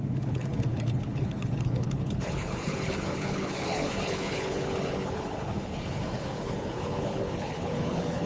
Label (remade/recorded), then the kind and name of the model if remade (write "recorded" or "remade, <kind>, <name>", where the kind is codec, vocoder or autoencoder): remade, codec, HILCodec